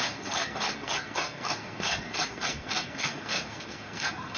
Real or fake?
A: fake